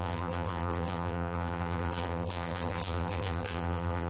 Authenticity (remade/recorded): remade